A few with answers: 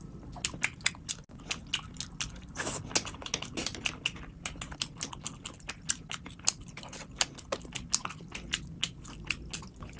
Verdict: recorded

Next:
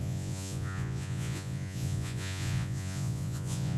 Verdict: remade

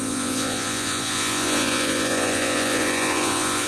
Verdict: remade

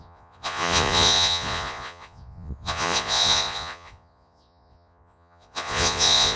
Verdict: remade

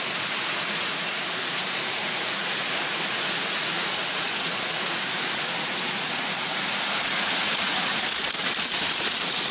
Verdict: remade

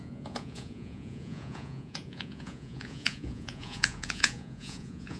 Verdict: remade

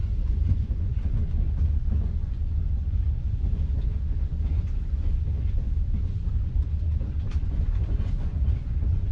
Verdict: remade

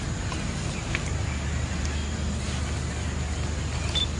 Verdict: recorded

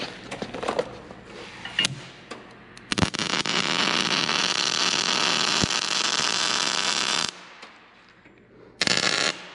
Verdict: recorded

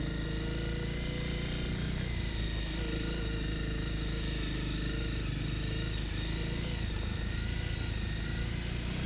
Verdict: recorded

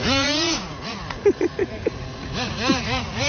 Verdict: remade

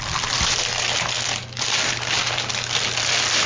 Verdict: recorded